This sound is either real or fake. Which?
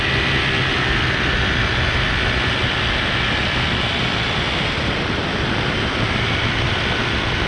real